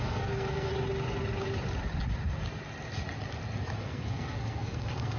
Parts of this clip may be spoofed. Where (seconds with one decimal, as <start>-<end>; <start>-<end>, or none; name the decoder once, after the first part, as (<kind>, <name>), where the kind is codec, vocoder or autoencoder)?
0.0-0.7 (codec, SNAC); 3.8-5.2